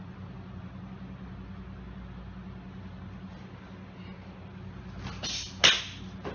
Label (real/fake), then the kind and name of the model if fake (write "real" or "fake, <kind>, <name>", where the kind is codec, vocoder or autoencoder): real